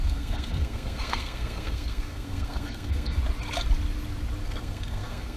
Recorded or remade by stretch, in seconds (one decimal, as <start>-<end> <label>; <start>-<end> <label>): 0.0-3.2 remade; 3.2-4.4 recorded; 4.4-5.4 remade